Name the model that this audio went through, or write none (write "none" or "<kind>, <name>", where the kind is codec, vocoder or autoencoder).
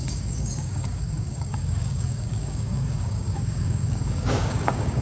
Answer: codec, DAC